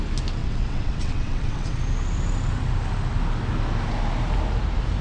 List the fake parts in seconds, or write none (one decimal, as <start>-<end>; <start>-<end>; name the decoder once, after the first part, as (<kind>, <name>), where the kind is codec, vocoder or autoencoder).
0.4-1.8 (vocoder, WaveNeXt)